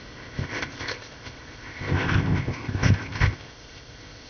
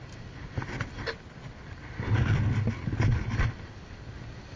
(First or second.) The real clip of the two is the second